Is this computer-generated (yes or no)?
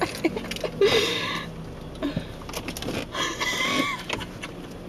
no